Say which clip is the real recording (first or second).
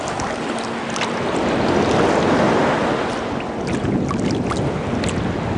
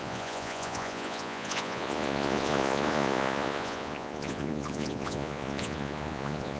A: first